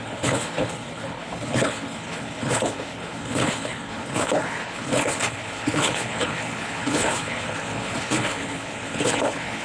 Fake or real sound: fake